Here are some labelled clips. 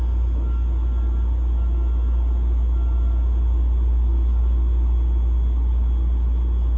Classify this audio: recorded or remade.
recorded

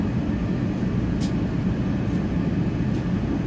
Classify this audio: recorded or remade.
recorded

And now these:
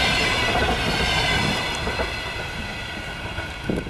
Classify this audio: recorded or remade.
recorded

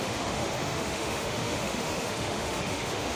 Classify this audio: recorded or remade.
remade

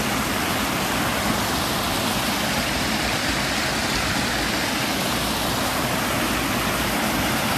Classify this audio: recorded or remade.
recorded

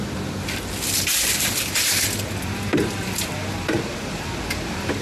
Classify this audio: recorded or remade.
remade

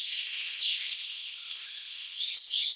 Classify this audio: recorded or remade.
remade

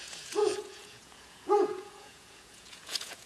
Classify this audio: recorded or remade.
remade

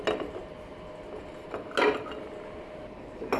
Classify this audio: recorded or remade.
recorded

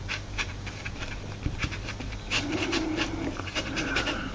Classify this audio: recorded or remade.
remade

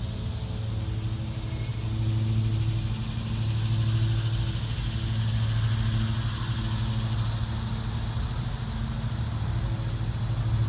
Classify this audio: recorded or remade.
recorded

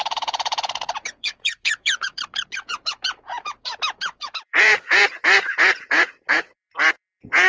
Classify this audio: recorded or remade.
remade